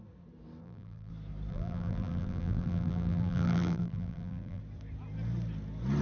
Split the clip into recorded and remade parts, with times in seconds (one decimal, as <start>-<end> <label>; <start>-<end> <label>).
0.0-0.6 recorded; 0.6-1.1 remade; 1.1-1.5 recorded; 1.5-4.6 remade; 4.6-6.0 recorded